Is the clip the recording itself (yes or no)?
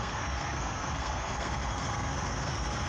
no